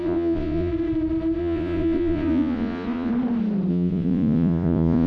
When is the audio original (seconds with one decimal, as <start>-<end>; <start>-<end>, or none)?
0.7-1.4; 3.1-3.7